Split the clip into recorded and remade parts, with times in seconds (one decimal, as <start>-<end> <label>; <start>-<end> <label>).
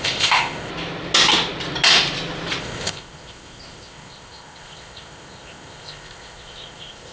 0.0-0.7 remade; 0.7-2.6 recorded; 2.6-7.1 remade